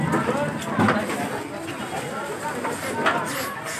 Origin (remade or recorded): recorded